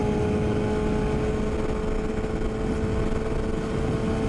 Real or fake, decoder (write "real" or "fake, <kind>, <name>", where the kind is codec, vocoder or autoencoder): real